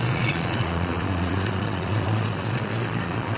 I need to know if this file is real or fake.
fake